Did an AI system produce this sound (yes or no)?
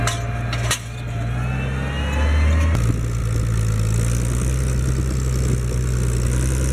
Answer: no